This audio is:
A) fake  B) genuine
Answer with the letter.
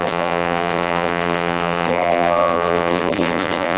A